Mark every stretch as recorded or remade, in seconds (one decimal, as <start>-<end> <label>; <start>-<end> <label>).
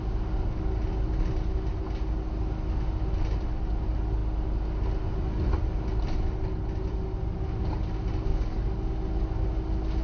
0.0-8.3 recorded; 8.3-8.9 remade; 8.9-10.0 recorded